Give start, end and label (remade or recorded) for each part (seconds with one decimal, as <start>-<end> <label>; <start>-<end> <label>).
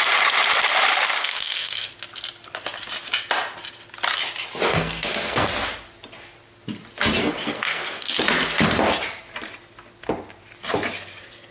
0.0-1.2 recorded; 1.2-1.9 remade; 1.9-4.7 recorded; 4.7-5.5 remade; 5.5-7.2 recorded; 7.2-8.1 remade; 8.1-11.5 recorded